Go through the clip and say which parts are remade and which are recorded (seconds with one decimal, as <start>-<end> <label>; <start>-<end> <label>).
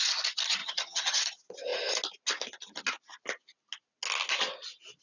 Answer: 0.0-0.6 recorded; 0.6-1.2 remade; 1.2-5.0 recorded